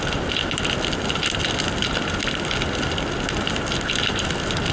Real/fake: real